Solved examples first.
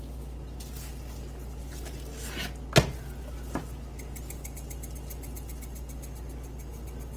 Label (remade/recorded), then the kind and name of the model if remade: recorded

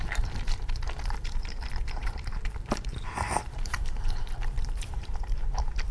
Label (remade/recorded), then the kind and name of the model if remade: remade, vocoder, BigVGAN v2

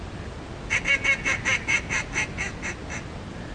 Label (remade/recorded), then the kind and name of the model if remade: recorded